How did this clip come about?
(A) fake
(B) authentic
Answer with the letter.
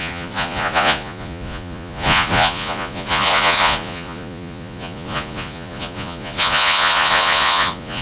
A